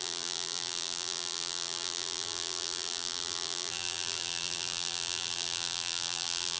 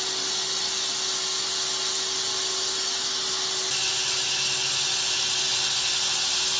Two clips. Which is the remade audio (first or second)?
first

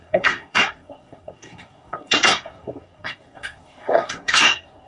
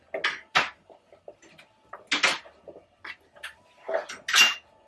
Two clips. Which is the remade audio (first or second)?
first